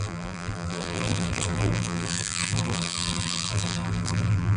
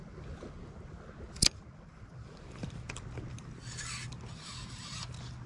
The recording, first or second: second